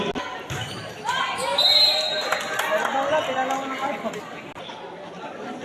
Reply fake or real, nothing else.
real